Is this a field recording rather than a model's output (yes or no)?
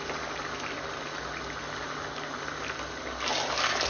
yes